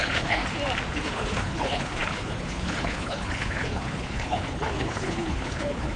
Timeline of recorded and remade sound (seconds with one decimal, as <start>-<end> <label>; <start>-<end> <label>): 0.0-0.4 remade; 0.4-0.9 recorded; 0.9-6.0 remade